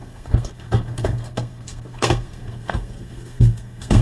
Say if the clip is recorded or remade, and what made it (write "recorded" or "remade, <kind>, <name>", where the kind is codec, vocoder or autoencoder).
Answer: remade, codec, SNAC